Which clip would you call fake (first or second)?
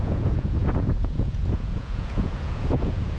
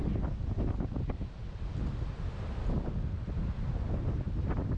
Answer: first